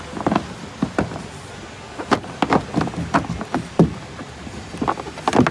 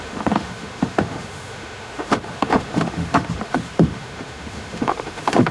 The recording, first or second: first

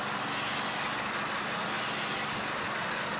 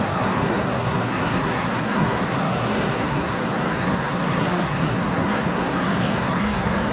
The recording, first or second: first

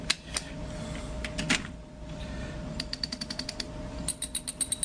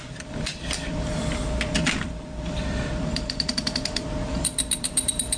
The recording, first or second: first